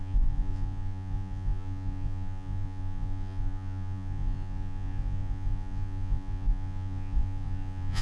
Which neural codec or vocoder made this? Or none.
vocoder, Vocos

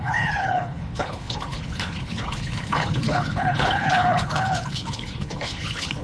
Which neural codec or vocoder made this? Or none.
codec, HILCodec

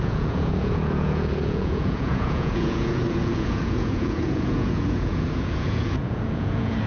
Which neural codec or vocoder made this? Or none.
vocoder, Vocos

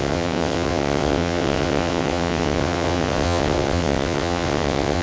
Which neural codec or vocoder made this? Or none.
vocoder, WaveNeXt